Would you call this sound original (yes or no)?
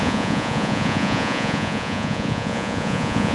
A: no